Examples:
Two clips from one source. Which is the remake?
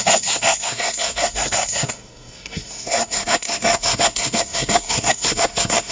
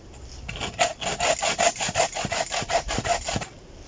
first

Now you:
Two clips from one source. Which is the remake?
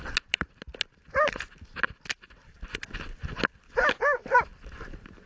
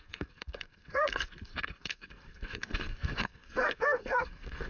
second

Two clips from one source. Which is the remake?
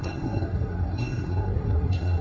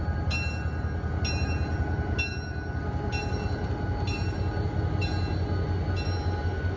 first